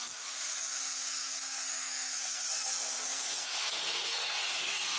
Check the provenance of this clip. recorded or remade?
remade